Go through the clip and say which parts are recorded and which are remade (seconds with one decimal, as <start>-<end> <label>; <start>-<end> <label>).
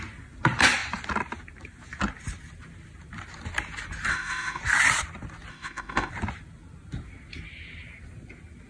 0.0-4.1 recorded; 4.1-4.6 remade; 4.6-5.5 recorded; 5.5-6.1 remade; 6.1-8.7 recorded